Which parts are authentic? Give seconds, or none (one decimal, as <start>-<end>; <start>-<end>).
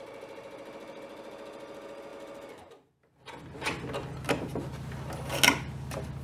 0.0-6.2